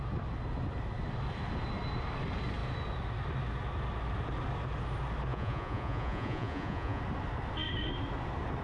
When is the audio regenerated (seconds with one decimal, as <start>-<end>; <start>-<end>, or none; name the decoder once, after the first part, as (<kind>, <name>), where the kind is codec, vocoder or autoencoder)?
5.3-7.0 (vocoder, Vocos)